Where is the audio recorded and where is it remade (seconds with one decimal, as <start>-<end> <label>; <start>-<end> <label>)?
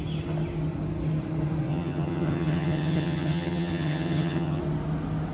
0.0-1.7 recorded; 1.7-4.6 remade; 4.6-5.3 recorded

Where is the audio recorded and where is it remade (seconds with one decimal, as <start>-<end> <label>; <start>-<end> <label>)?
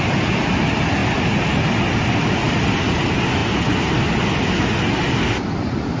0.0-6.0 recorded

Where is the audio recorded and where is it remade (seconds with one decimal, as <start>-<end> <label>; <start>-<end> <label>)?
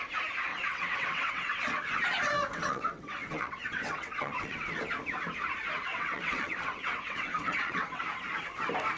0.0-0.5 recorded; 0.5-2.0 remade; 2.0-2.5 recorded; 2.5-4.8 remade; 4.8-5.9 recorded; 5.9-8.0 remade; 8.0-9.0 recorded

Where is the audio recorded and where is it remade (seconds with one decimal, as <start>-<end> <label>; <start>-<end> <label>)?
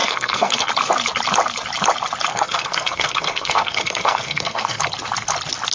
0.0-0.7 remade; 0.7-2.3 recorded; 2.3-4.8 remade; 4.8-5.7 recorded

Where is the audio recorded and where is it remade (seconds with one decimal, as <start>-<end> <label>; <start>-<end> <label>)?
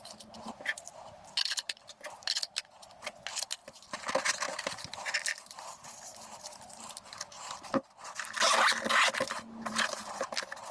0.0-10.7 recorded